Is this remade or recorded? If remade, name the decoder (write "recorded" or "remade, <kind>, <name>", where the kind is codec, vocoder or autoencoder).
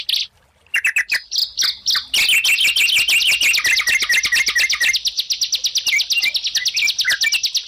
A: recorded